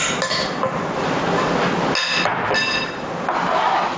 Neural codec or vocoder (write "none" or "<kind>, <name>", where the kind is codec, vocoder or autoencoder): none